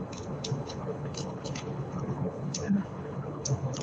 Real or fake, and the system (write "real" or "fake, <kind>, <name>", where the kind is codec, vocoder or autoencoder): fake, codec, HILCodec